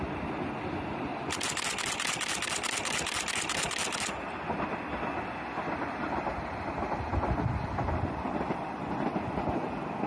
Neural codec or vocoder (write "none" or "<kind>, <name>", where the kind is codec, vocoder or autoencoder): none